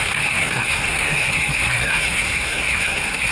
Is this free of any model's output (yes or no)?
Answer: no